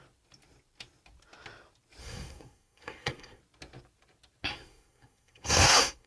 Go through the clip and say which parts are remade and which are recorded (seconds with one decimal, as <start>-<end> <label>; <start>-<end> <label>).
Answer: 0.0-2.0 recorded; 2.0-3.4 remade; 3.4-4.5 recorded; 4.5-6.1 remade